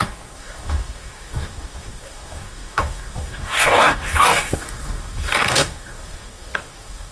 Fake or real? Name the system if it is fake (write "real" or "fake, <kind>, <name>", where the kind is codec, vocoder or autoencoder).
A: fake, codec, DAC